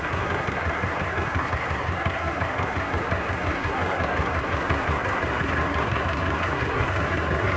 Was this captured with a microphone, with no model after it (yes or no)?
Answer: no